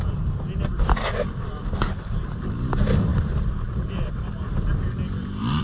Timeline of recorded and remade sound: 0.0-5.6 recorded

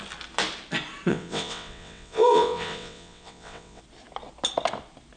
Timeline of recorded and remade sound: 0.0-1.1 recorded; 1.1-3.8 remade; 3.8-5.2 recorded

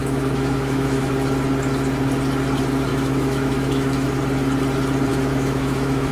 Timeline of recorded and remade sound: 0.0-1.1 remade; 1.1-2.9 recorded; 2.9-4.1 remade; 4.1-5.1 recorded; 5.1-6.1 remade

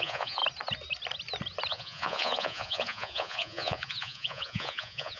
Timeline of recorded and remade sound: 0.0-0.4 remade; 0.4-1.7 recorded; 1.7-5.2 remade